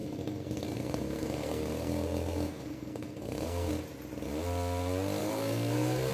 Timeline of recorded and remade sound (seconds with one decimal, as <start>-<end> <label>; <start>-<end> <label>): 0.0-3.7 remade; 3.7-5.2 recorded; 5.2-6.1 remade

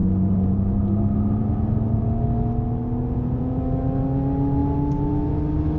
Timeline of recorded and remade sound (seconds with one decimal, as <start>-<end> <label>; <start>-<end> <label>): 0.0-1.0 remade; 1.0-3.0 recorded; 3.0-3.6 remade; 3.6-5.8 recorded

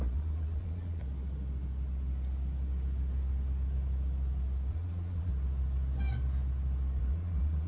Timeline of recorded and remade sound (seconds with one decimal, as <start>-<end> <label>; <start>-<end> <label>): 0.0-1.0 remade; 1.0-4.7 recorded; 4.7-5.3 remade; 5.3-7.0 recorded; 7.0-7.7 remade